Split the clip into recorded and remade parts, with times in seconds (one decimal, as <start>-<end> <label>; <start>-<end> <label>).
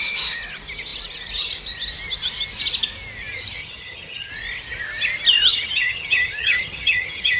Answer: 0.0-3.6 recorded; 3.6-4.3 remade; 4.3-5.5 recorded; 5.5-7.4 remade